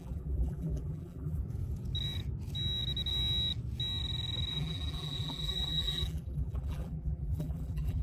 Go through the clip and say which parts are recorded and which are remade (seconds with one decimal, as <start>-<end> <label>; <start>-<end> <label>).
0.0-1.4 remade; 1.4-4.5 recorded; 4.5-8.0 remade